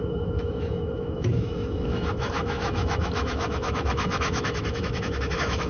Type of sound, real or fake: fake